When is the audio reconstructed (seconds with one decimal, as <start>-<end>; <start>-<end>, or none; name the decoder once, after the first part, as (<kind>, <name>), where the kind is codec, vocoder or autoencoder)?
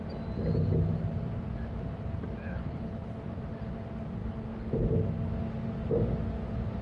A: 2.4-3.2 (codec, HILCodec)